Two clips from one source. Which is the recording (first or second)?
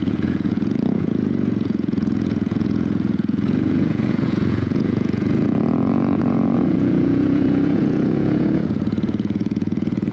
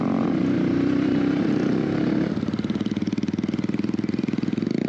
second